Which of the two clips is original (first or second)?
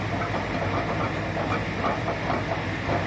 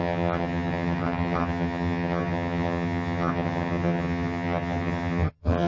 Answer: first